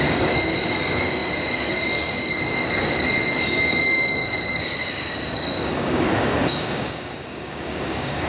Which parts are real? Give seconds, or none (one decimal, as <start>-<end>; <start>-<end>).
none